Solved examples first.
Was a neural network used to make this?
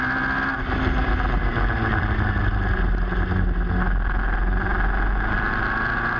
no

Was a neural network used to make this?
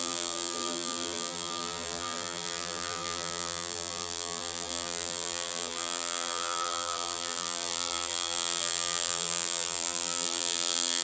yes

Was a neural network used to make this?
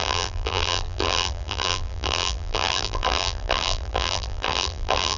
yes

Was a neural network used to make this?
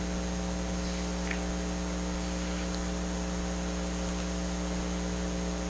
no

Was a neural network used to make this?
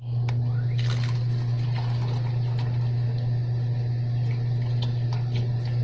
no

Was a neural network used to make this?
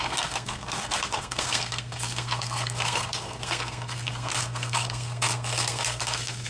yes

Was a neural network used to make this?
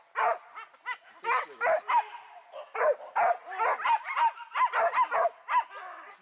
no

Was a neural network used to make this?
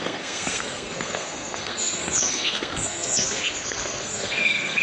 yes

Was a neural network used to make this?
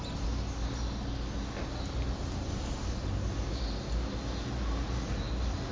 no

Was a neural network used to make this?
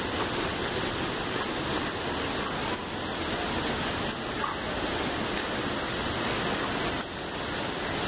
no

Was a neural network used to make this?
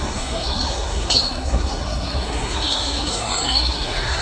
yes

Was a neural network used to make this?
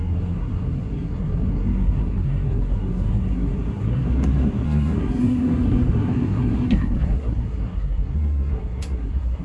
yes